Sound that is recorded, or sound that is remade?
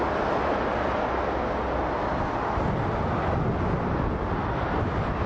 recorded